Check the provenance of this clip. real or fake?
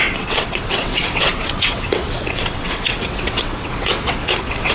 fake